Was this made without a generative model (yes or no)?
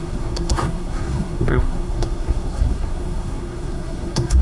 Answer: no